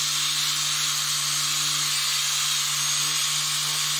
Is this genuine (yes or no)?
yes